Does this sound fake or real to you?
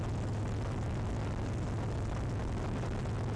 real